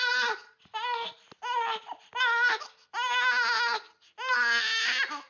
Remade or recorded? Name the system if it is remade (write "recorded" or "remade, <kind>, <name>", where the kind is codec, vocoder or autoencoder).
recorded